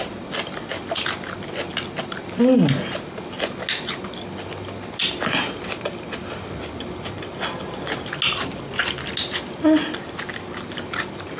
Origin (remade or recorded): recorded